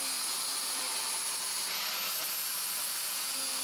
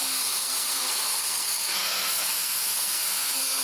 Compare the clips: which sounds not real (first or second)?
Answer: second